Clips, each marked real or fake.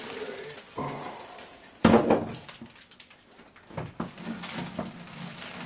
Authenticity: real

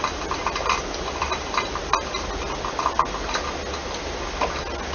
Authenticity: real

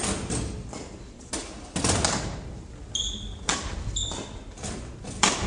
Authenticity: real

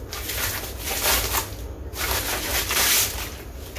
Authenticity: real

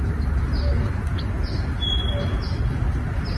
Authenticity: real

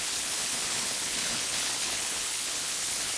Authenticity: fake